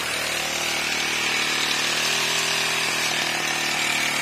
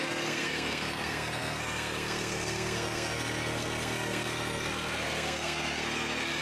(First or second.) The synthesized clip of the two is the second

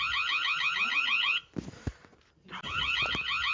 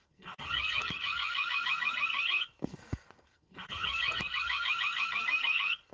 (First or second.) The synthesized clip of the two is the second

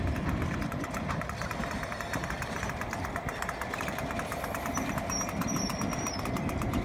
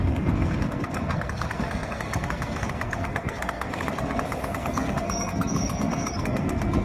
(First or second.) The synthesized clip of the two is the second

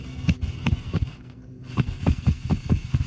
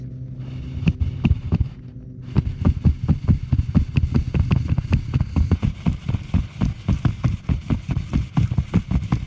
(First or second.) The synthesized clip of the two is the first